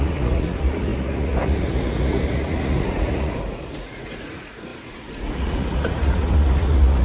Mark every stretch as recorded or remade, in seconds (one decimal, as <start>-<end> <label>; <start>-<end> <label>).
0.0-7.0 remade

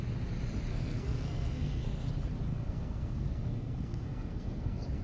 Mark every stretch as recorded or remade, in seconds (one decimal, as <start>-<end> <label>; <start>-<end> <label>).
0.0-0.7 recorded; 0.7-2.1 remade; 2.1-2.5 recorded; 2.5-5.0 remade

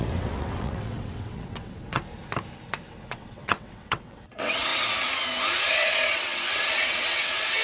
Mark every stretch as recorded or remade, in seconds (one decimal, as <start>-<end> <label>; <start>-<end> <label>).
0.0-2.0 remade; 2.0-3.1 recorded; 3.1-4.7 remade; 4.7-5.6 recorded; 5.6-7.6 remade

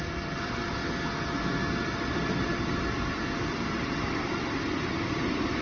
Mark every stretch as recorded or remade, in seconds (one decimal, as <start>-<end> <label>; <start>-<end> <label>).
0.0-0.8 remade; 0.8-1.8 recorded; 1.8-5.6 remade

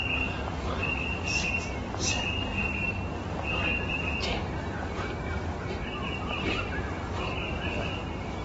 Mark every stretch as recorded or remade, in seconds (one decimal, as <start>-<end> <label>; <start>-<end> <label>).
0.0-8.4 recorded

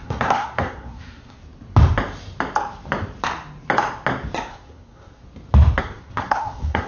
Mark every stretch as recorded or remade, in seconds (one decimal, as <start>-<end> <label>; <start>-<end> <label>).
0.0-1.4 remade; 1.4-4.5 recorded; 4.5-5.2 remade; 5.2-5.8 recorded; 5.8-6.9 remade

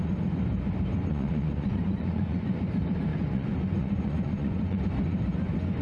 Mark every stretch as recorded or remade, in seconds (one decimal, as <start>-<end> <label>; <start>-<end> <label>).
0.0-1.1 recorded; 1.1-2.6 remade; 2.6-3.1 recorded; 3.1-4.8 remade; 4.8-5.8 recorded

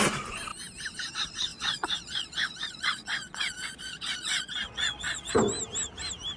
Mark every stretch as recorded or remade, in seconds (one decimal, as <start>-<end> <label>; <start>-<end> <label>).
0.0-1.5 recorded; 1.5-5.3 remade; 5.3-6.4 recorded